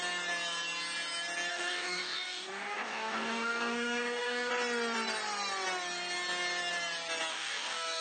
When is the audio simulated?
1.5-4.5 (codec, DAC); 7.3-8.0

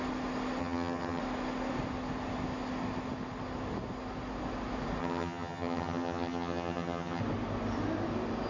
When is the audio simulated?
0.6-1.2 (vocoder, HiFi-GAN); 5.0-7.2

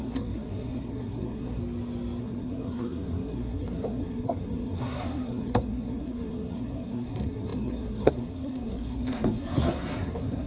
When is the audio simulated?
0.0-1.6 (codec, SNAC); 2.2-10.5

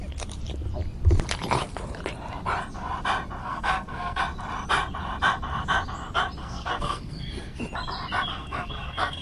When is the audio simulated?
3.4-4.2 (codec, SNAC); 6.4-7.6; 8.3-9.2

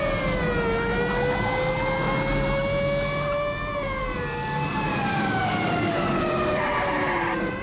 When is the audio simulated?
5.1-6.2 (codec, DAC)

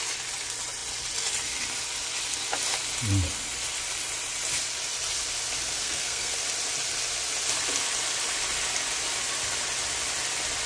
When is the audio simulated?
5.8-6.3 (codec, SNAC)